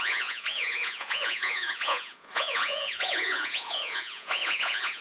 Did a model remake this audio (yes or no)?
yes